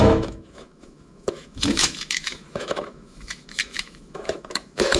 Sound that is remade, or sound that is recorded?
remade